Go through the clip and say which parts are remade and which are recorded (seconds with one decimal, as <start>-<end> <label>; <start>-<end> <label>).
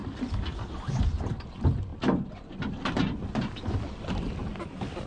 0.0-5.1 recorded